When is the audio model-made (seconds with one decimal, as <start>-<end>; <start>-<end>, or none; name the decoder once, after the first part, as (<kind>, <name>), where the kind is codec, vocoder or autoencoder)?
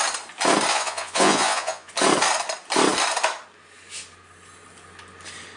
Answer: 0.7-1.9 (vocoder, Vocos)